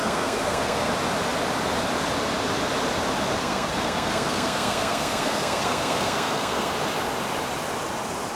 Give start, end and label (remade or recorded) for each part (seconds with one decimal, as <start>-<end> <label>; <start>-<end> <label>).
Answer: 0.0-0.9 remade; 0.9-3.4 recorded; 3.4-6.7 remade; 6.7-8.4 recorded